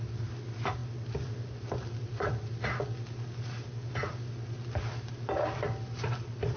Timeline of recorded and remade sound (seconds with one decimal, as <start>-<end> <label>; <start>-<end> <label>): 0.0-6.6 recorded

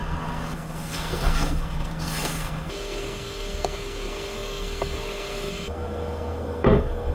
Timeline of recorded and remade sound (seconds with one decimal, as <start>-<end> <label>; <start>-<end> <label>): 0.0-7.1 remade

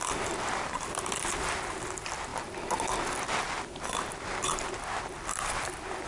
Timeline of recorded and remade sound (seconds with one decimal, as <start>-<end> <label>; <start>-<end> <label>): 0.0-2.3 remade; 2.3-4.6 recorded; 4.6-6.1 remade

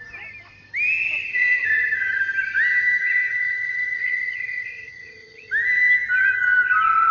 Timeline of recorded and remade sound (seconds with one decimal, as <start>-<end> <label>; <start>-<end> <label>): 0.0-1.3 recorded; 1.3-2.2 remade; 2.2-3.0 recorded; 3.0-5.5 remade; 5.5-7.1 recorded